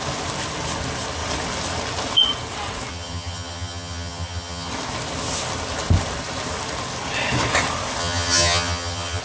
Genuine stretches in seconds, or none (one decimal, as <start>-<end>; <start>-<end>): 0.0-2.9; 4.7-8.0